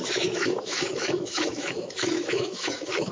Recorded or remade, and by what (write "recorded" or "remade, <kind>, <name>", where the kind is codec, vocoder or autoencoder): remade, autoencoder, DAC-VAE